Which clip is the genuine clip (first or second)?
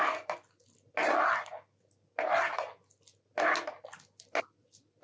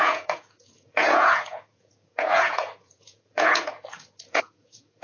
first